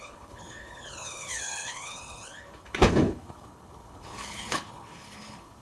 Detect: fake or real fake